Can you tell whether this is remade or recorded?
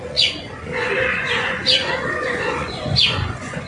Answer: remade